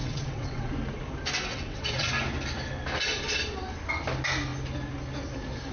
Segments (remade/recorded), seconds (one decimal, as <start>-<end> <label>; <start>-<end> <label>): 0.0-0.7 remade; 0.7-1.5 recorded; 1.5-2.1 remade; 2.1-5.7 recorded